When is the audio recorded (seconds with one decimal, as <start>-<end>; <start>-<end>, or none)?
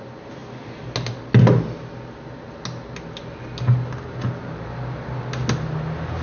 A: 0.0-6.2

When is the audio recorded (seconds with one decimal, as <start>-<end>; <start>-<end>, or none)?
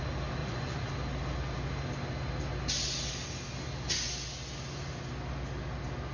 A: 0.0-0.4; 0.9-6.1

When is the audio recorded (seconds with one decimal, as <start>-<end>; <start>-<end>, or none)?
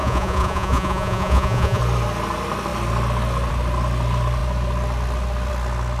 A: 1.8-6.0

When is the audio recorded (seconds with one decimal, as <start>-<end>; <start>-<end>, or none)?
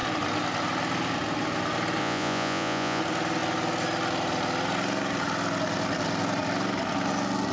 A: 0.0-2.0; 3.0-7.5